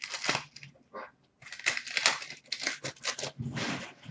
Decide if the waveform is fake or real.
real